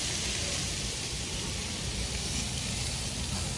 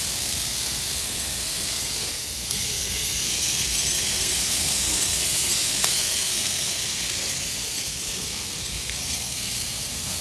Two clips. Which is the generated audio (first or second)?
second